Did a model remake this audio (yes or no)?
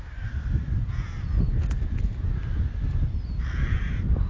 no